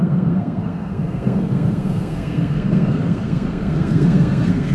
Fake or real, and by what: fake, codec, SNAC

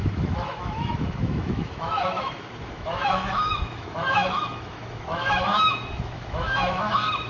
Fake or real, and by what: fake, autoencoder, DAC-VAE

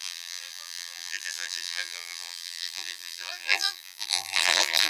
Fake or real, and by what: fake, vocoder, BigVGAN v2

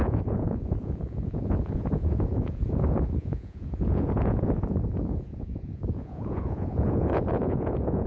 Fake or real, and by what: fake, vocoder, Vocos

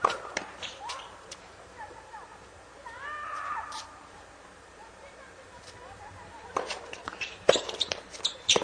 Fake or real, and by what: fake, vocoder, BigVGAN v2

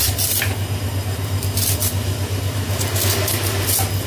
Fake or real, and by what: real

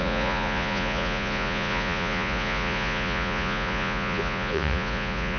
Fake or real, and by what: fake, vocoder, Vocos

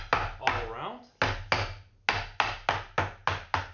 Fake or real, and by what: real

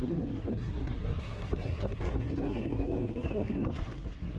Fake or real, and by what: fake, codec, SNAC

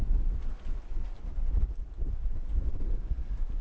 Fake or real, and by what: real